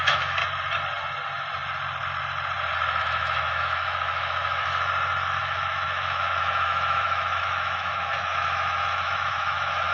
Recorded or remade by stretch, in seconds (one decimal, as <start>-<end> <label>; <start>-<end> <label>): 0.0-0.4 remade; 0.4-3.0 recorded; 3.0-4.7 remade; 4.7-5.4 recorded; 5.4-9.9 remade